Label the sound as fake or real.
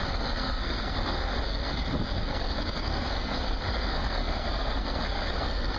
fake